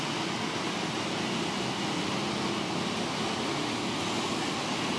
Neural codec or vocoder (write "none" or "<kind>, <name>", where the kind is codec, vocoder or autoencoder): none